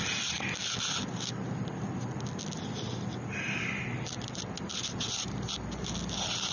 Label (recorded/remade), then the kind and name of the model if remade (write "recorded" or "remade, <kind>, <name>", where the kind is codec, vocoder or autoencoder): recorded